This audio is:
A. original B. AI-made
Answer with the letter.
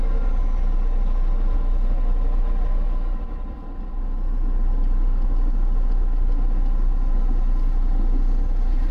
A